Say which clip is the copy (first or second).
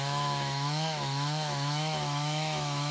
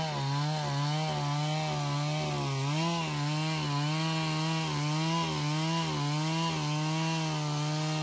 first